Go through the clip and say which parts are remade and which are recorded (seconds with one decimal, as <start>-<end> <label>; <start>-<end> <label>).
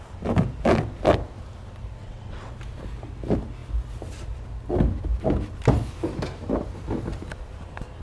0.0-2.0 recorded; 2.0-2.5 remade; 2.5-8.0 recorded